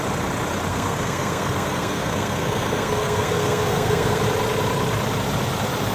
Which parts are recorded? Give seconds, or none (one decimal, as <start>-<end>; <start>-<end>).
0.0-0.7; 4.2-5.9